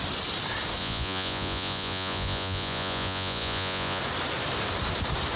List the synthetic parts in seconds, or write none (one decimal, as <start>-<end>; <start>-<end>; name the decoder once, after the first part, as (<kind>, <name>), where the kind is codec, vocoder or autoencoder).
0.8-4.0 (vocoder, Vocos)